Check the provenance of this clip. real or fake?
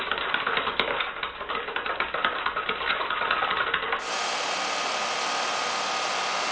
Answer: real